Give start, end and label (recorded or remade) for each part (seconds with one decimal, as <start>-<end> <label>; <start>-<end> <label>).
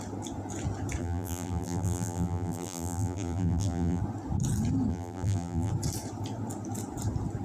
0.0-1.0 recorded; 1.0-4.0 remade; 4.0-4.9 recorded; 4.9-5.7 remade; 5.7-7.4 recorded